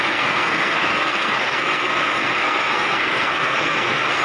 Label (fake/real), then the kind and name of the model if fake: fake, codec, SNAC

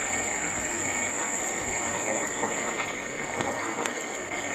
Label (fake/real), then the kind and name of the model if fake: fake, codec, SNAC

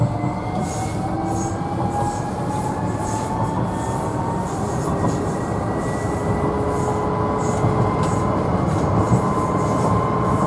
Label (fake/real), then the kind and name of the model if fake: real